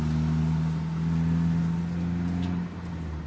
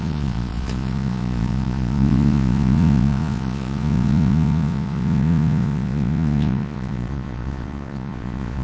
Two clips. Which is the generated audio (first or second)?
second